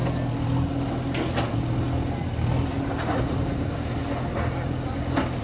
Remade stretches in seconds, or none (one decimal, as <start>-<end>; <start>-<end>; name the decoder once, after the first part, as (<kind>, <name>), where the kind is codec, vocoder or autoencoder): 3.2-4.0 (vocoder, BigVGAN v2)